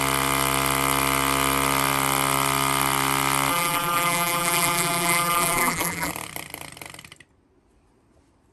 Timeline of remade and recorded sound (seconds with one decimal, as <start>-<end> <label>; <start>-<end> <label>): 0.0-3.5 recorded; 3.5-6.1 remade; 6.1-8.5 recorded